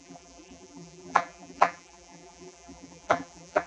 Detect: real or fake fake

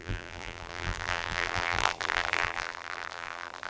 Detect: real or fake fake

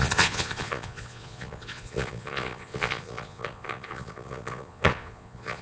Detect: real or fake fake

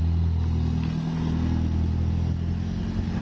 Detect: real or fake real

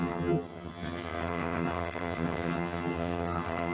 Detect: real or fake fake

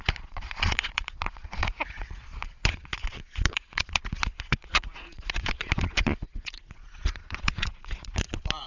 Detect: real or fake fake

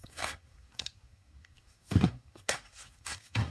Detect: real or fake fake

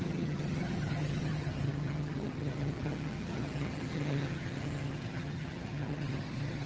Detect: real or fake fake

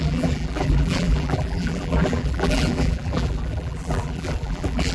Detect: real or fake fake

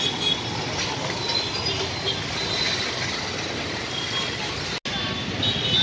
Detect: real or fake real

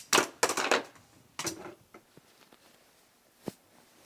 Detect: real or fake real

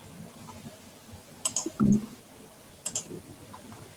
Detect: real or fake real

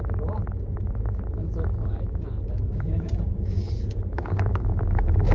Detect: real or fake fake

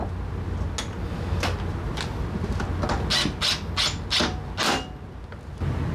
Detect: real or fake real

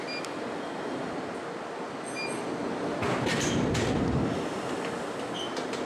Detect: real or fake real